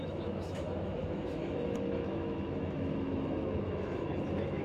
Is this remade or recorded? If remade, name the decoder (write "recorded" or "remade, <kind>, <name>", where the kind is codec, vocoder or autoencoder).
remade, autoencoder, DAC-VAE